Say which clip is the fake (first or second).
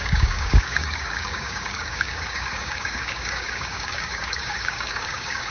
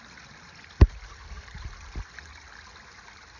first